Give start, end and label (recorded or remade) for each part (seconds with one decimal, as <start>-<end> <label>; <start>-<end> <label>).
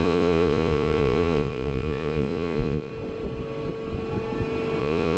0.0-2.9 remade; 2.9-4.8 recorded; 4.8-5.2 remade